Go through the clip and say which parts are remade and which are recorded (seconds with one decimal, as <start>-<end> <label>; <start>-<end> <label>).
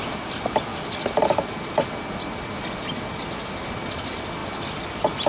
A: 0.0-5.3 recorded